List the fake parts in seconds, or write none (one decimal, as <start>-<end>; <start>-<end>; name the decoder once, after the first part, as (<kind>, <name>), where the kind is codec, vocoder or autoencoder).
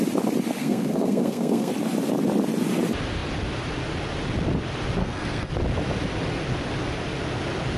0.6-1.7 (codec, SNAC); 5.0-5.5